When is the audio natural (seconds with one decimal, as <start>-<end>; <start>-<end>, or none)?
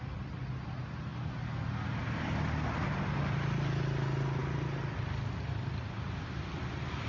0.0-7.1